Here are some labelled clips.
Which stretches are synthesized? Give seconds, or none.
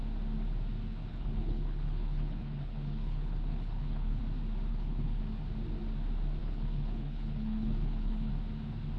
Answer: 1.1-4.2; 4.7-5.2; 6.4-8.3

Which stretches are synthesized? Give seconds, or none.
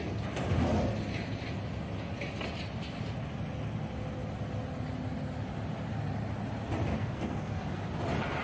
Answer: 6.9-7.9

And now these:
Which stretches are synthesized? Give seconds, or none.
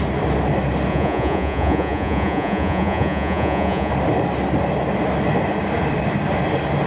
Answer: 0.9-3.9